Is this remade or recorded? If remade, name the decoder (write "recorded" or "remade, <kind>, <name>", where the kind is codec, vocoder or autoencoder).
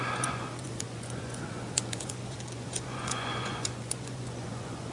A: remade, vocoder, Vocos